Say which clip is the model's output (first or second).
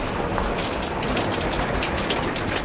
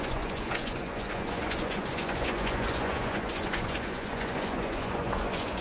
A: second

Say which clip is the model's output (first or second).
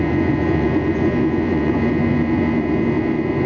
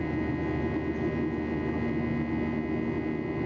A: first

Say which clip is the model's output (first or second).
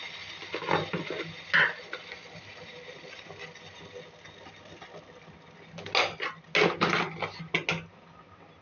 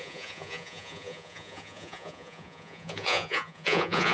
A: second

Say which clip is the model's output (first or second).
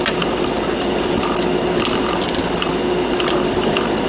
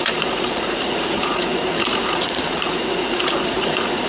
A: second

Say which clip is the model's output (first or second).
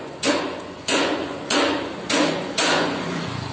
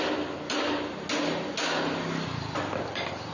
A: first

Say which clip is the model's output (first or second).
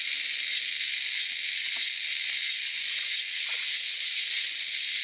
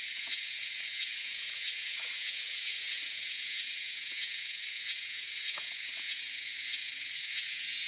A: second